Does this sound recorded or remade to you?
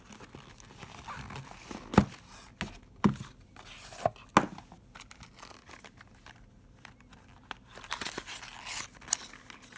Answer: recorded